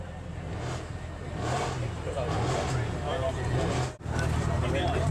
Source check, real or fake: real